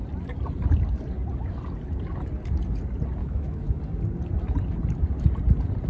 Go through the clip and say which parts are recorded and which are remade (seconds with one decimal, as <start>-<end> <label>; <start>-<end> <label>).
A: 0.0-3.2 recorded; 3.2-3.8 remade; 3.8-5.9 recorded

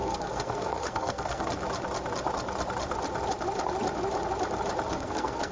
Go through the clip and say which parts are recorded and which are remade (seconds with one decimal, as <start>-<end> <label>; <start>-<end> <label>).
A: 0.0-1.6 remade; 1.6-4.9 recorded; 4.9-5.5 remade

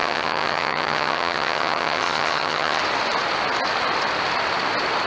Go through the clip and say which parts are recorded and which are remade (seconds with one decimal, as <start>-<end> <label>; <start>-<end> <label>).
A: 0.0-2.8 remade; 2.8-5.1 recorded

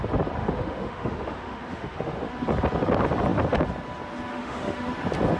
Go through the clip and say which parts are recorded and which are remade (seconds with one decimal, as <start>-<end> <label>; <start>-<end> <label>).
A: 0.0-0.4 recorded; 0.4-2.3 remade; 2.3-4.3 recorded; 4.3-4.9 remade; 4.9-5.4 recorded